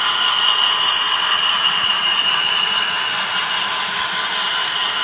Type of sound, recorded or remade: recorded